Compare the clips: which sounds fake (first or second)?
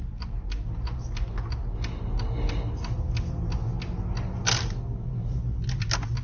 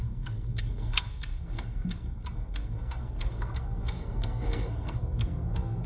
second